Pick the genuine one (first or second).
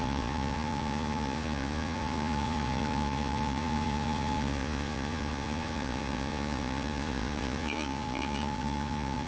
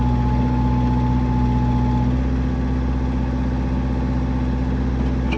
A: second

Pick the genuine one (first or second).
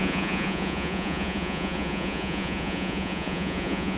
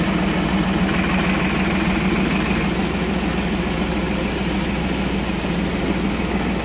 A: second